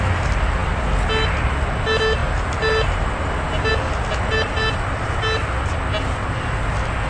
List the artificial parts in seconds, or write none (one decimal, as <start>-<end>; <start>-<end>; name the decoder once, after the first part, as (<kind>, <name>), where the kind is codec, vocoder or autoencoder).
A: none